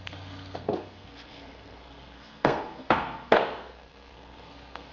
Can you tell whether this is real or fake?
fake